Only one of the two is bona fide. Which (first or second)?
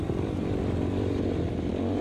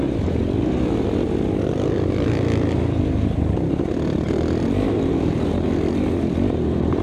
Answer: first